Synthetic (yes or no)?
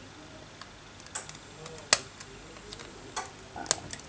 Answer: no